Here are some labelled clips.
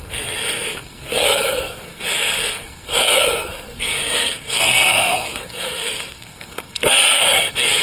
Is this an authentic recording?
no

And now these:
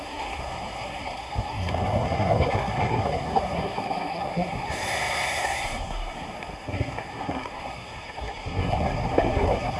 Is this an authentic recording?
no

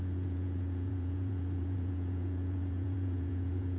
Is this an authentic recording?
no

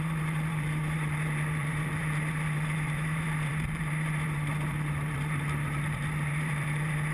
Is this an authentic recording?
no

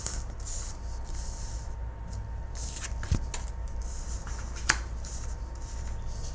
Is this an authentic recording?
yes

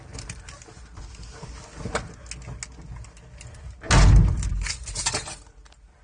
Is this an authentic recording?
yes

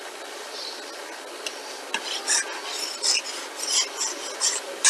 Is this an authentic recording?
yes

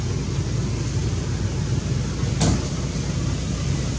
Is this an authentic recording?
yes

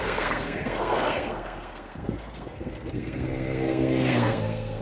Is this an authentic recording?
no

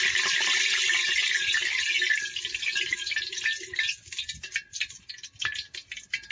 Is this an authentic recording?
yes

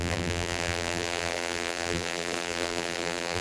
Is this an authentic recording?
no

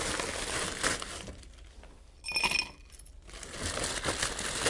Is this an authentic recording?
yes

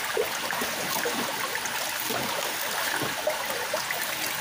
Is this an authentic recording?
yes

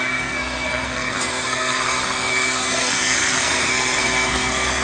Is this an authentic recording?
no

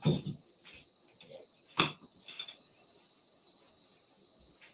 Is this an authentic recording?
yes